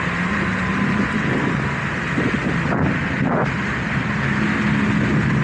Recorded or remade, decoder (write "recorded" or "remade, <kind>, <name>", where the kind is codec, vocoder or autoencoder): recorded